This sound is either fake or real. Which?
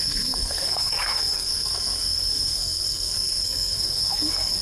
fake